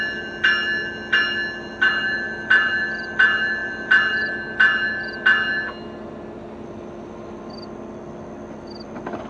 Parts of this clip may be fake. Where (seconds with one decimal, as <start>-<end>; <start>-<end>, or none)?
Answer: none